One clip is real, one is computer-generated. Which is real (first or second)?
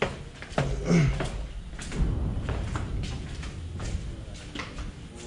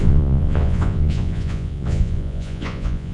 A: first